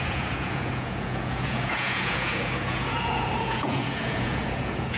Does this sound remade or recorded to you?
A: remade